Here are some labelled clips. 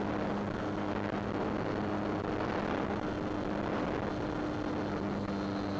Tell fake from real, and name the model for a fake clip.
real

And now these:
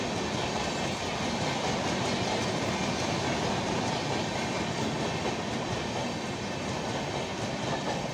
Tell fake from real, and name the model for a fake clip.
real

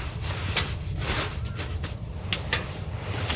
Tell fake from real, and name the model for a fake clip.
real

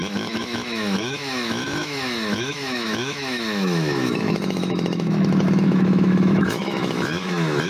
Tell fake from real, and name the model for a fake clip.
fake, autoencoder, DAC-VAE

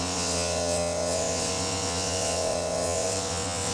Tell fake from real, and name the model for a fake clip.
fake, vocoder, WaveNeXt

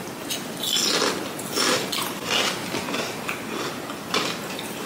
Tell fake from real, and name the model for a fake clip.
real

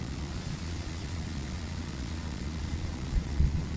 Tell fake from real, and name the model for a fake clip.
fake, vocoder, Vocos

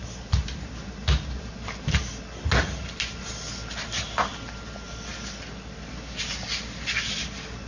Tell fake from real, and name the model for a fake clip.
real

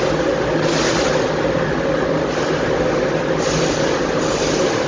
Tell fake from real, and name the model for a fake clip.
real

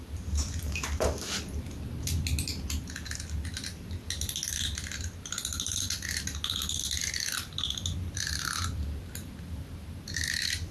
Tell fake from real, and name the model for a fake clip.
real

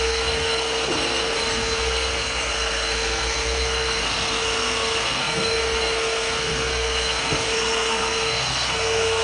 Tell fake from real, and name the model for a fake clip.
fake, codec, SNAC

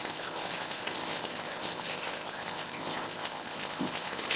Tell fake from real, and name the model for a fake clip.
fake, codec, ZipCodec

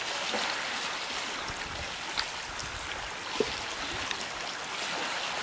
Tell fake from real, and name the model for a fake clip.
real